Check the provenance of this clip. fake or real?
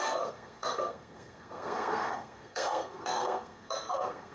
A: fake